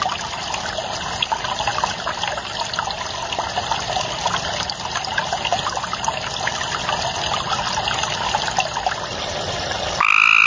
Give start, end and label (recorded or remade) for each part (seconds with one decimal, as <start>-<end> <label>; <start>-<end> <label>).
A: 0.0-10.5 recorded